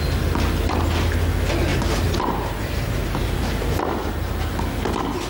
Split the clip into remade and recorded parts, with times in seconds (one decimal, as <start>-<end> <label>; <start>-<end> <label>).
0.0-1.7 recorded; 1.7-3.7 remade; 3.7-5.3 recorded

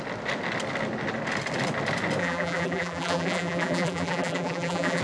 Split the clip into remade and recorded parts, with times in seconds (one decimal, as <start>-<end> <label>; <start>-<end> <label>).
0.0-2.2 recorded; 2.2-5.0 remade

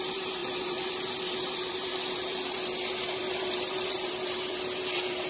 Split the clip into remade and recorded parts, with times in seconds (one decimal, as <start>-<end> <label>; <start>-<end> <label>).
0.0-5.3 remade

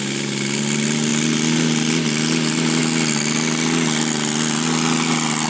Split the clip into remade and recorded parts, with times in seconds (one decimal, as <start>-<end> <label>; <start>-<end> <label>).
0.0-5.5 recorded

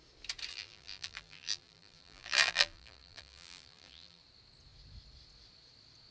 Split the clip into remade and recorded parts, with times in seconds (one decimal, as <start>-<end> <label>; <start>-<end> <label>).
0.0-0.5 recorded; 0.5-4.2 remade; 4.2-6.1 recorded